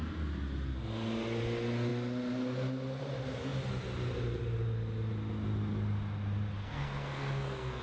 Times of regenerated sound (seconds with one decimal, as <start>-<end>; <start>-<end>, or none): 6.6-7.8